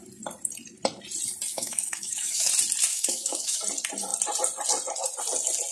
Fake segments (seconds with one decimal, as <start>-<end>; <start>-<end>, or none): 1.5-2.5; 2.9-3.6